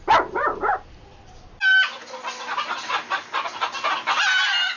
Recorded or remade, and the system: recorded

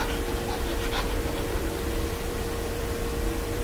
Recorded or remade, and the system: remade, vocoder, BigVGAN v2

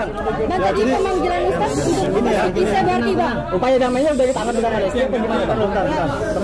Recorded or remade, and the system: recorded